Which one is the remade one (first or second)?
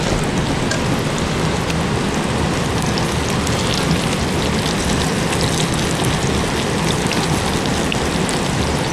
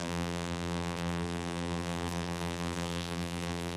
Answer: second